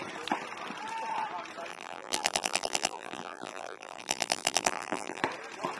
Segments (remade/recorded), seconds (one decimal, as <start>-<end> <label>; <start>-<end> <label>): 0.0-1.7 recorded; 1.7-5.2 remade; 5.2-5.8 recorded